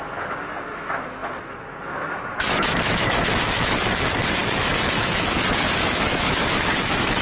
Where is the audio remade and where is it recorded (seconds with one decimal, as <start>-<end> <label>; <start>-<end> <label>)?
0.0-7.2 remade